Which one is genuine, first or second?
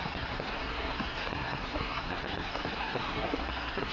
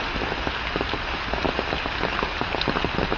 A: second